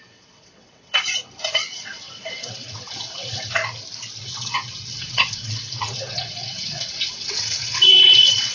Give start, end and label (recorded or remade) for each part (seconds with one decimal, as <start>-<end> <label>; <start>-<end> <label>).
0.0-3.6 remade; 3.6-4.2 recorded; 4.2-8.5 remade